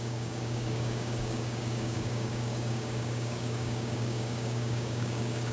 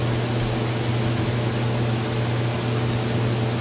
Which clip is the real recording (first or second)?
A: second